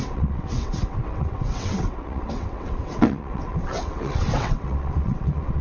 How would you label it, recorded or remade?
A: remade